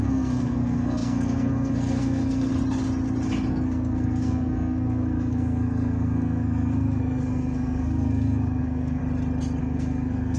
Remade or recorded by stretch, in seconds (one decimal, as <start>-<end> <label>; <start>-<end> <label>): 0.0-2.5 remade; 2.5-3.5 recorded; 3.5-9.0 remade; 9.0-9.6 recorded; 9.6-10.4 remade